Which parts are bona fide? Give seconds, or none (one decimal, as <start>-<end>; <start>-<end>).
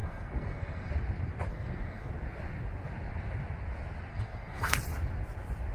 0.9-1.5; 2.1-4.1; 4.8-5.7